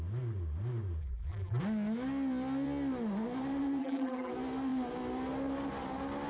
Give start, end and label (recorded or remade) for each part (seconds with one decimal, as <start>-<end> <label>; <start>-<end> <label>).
0.0-1.0 recorded; 1.0-1.6 remade; 1.6-3.8 recorded; 3.8-4.3 remade; 4.3-6.3 recorded